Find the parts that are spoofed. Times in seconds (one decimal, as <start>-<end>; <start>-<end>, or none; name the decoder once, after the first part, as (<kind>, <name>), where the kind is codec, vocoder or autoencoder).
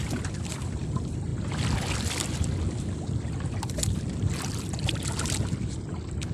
none